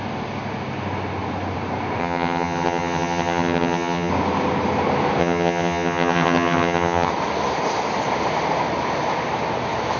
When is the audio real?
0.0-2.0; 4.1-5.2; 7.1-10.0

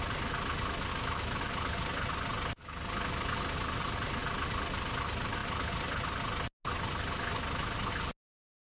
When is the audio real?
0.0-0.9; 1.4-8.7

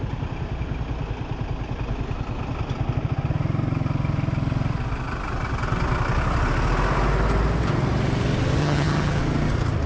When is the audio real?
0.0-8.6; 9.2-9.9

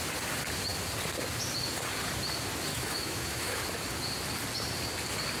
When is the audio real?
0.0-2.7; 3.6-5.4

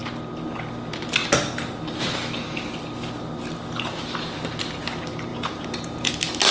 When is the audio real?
0.0-5.3; 6.1-6.5

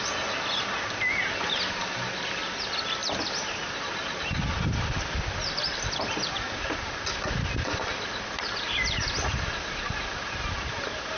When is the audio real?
0.0-11.2

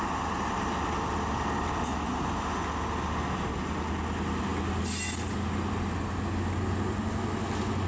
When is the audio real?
0.0-7.9